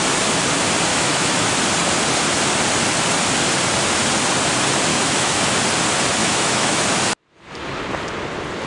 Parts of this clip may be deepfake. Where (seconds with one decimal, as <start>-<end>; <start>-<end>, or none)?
0.9-1.6; 4.9-5.4; 6.2-6.8